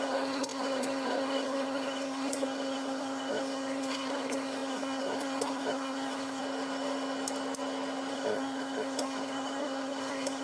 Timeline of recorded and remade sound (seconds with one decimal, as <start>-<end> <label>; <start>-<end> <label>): 0.0-6.4 remade; 6.4-8.1 recorded; 8.1-10.4 remade